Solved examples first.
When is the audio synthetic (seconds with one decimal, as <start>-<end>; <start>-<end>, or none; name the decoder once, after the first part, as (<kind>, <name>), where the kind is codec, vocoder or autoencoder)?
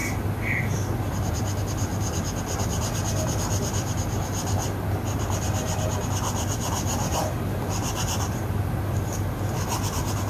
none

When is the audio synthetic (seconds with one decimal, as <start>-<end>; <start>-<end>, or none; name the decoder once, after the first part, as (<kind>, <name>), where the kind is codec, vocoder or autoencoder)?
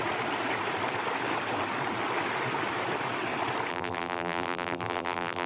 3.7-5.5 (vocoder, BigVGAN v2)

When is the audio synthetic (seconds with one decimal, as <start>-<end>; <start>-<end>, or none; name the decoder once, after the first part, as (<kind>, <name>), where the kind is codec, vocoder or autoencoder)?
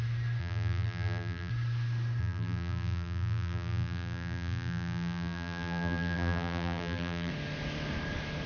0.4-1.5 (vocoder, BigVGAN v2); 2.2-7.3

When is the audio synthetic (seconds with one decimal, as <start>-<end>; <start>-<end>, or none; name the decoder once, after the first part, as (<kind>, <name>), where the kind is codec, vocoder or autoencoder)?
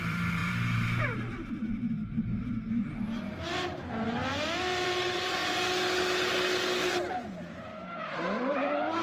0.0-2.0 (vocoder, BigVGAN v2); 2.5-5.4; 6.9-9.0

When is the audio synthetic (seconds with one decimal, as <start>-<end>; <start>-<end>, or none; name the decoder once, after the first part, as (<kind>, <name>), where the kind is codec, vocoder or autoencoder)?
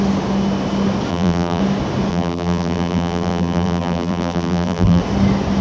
1.1-1.6 (vocoder, BigVGAN v2); 2.1-5.0